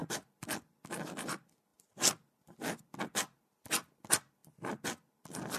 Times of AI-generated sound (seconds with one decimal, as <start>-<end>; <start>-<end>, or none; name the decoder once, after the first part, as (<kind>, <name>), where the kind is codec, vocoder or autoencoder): none